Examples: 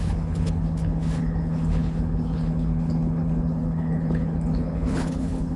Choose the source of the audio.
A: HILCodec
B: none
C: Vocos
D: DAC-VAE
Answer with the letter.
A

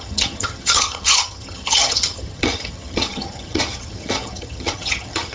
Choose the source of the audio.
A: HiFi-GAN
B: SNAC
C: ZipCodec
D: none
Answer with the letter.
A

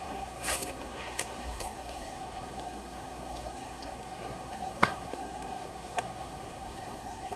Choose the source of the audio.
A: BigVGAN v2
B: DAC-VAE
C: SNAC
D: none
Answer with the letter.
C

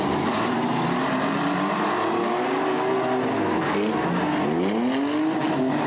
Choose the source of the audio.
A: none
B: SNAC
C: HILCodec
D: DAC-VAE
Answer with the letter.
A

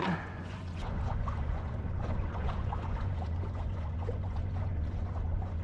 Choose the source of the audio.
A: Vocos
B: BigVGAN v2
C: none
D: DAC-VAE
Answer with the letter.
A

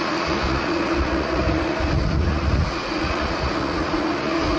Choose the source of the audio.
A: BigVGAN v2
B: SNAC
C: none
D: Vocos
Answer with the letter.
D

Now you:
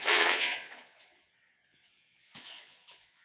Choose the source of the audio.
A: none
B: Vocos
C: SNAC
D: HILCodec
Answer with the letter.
B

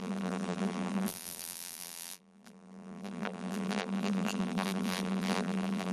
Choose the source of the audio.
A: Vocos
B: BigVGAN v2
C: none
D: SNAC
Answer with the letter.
B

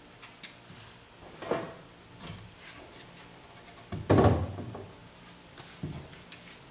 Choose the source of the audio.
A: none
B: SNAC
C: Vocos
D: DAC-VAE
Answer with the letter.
A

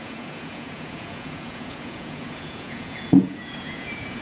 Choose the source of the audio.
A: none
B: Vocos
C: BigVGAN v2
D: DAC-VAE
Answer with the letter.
B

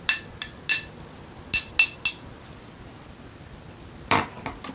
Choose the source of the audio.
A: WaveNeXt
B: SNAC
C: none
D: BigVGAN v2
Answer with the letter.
C